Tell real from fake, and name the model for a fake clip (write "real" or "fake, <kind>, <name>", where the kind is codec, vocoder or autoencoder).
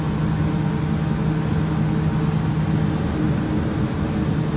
real